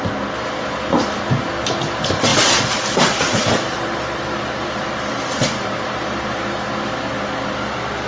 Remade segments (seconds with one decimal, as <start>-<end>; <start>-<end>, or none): 2.3-7.1